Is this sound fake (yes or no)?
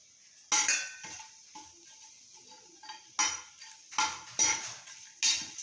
no